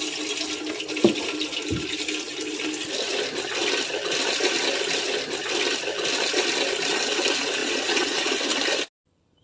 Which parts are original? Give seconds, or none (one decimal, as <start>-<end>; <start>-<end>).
0.0-7.6; 8.3-9.4